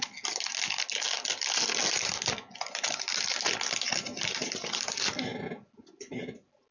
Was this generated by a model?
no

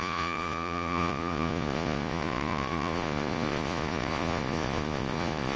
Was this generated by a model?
yes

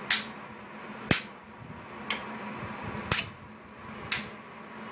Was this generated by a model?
no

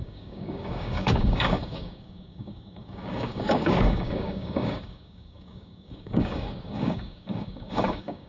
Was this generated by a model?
yes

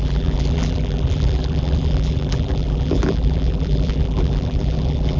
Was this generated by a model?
yes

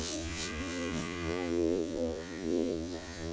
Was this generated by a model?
yes